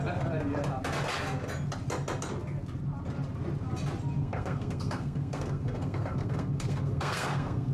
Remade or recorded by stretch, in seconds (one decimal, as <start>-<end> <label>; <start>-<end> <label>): 0.0-4.2 recorded; 4.2-7.7 remade

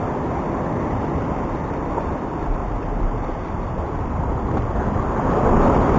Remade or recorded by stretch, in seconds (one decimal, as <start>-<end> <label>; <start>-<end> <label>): 0.0-2.6 remade; 2.6-3.5 recorded; 3.5-6.0 remade

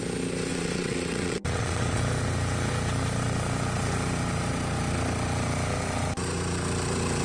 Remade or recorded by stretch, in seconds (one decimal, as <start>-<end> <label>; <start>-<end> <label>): 0.0-0.5 recorded; 0.5-2.0 remade; 2.0-7.2 recorded

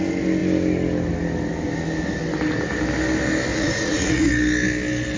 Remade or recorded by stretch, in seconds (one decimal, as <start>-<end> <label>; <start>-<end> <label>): 0.0-3.5 recorded; 3.5-4.3 remade; 4.3-5.2 recorded